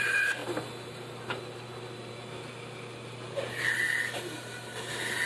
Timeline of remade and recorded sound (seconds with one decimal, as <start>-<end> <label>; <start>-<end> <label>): 0.0-5.3 recorded